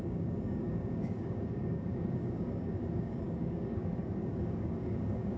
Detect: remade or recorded remade